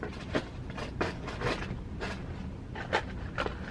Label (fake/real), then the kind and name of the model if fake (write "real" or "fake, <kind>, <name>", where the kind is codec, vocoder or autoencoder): real